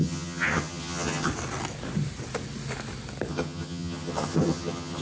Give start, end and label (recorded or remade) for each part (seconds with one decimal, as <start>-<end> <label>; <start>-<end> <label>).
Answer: 0.0-1.3 remade; 1.3-3.3 recorded; 3.3-5.0 remade